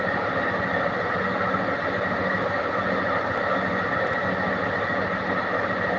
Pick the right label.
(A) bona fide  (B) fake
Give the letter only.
A